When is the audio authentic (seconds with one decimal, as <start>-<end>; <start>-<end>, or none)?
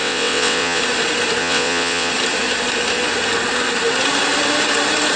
0.8-1.4; 2.1-5.2